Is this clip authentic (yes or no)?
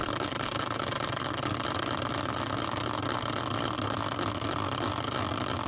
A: yes